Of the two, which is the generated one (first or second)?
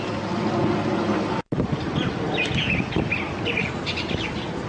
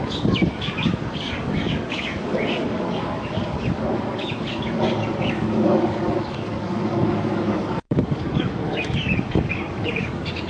second